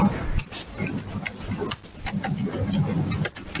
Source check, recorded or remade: recorded